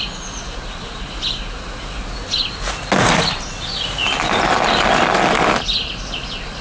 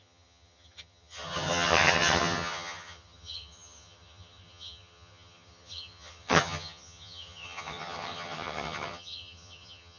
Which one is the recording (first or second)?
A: first